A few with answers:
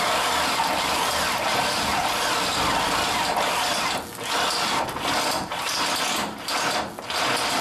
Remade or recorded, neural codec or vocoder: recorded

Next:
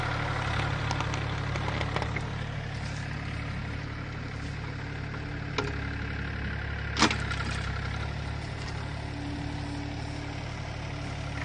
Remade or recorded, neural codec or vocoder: recorded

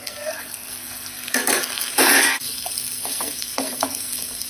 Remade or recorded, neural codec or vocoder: remade, codec, SNAC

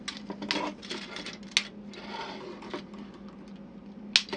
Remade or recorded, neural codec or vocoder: recorded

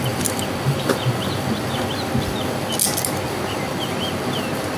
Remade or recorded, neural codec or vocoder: recorded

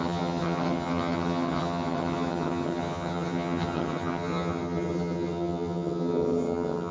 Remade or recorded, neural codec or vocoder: remade, vocoder, HiFi-GAN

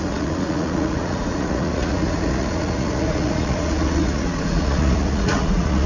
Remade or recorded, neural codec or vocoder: remade, vocoder, Vocos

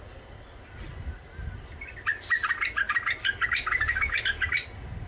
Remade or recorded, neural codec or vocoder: recorded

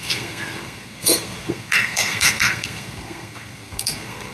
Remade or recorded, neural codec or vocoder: remade, codec, SNAC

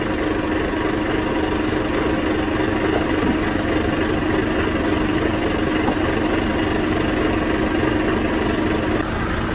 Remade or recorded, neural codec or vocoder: recorded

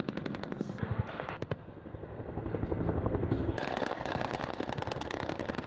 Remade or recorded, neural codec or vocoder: remade, codec, SNAC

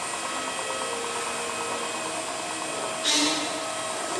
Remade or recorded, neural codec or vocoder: recorded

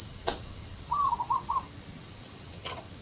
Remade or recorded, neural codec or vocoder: remade, vocoder, WaveNeXt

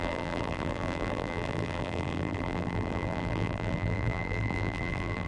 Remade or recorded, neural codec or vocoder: remade, vocoder, BigVGAN v2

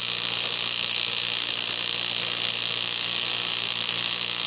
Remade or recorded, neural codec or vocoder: recorded